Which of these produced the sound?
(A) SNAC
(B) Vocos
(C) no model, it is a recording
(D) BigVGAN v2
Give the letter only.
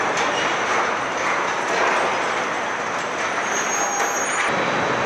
C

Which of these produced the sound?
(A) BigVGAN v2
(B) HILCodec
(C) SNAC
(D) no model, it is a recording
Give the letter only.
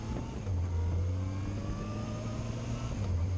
D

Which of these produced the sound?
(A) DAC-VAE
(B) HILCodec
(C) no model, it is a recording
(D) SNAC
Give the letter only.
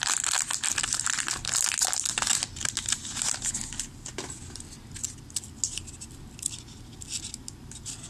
C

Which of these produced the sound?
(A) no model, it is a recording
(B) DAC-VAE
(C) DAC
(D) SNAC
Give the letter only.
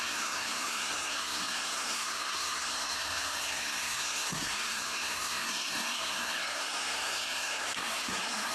D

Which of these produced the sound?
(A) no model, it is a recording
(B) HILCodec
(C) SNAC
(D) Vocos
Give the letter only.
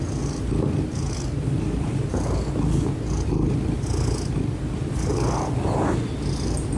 A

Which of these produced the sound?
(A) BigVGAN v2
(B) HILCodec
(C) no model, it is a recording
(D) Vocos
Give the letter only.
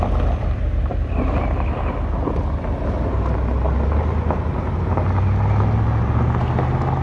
C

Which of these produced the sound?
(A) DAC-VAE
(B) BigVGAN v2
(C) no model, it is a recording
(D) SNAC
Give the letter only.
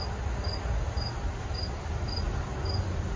C